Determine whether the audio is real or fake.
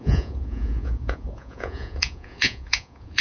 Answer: fake